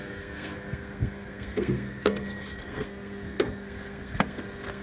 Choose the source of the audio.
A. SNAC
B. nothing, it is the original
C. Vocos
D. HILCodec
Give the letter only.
A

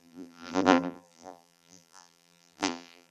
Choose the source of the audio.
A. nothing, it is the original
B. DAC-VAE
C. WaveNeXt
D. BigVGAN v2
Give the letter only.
D